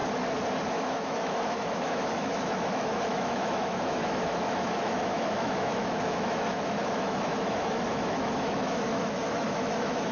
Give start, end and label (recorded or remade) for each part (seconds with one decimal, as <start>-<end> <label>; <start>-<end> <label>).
0.0-0.7 recorded; 0.7-10.1 remade

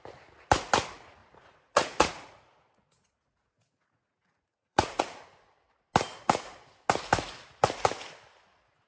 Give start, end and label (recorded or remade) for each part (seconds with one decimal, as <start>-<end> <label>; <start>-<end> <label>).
0.0-1.2 recorded; 1.2-5.0 remade; 5.0-8.9 recorded

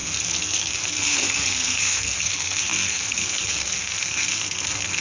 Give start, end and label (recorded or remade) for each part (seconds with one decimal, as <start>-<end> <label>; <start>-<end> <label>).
0.0-5.0 remade

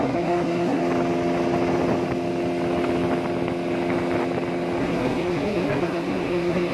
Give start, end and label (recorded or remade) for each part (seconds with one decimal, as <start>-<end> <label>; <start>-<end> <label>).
0.0-0.8 remade; 0.8-4.8 recorded; 4.8-6.7 remade